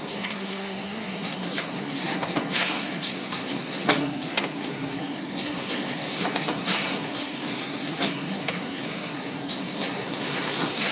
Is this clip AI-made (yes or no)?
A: yes